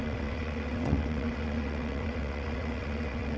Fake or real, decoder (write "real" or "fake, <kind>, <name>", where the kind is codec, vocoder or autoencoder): fake, vocoder, WaveNeXt